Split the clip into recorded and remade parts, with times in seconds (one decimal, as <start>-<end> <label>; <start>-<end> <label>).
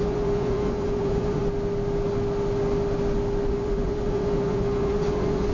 0.0-1.4 remade; 1.4-3.5 recorded; 3.5-5.5 remade